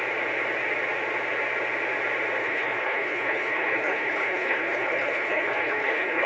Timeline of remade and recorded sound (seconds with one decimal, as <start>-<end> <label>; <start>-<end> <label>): 0.0-2.4 recorded; 2.4-6.3 remade